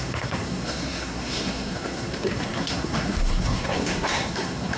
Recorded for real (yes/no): no